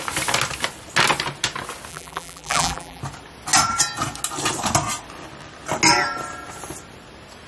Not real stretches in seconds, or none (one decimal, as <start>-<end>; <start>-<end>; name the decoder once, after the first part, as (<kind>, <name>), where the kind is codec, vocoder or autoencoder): 1.9-3.0 (vocoder, BigVGAN v2)